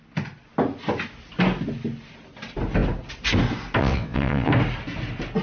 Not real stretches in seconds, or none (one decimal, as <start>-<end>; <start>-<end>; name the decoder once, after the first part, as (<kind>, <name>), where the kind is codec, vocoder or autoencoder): 3.8-4.5 (vocoder, WaveNeXt)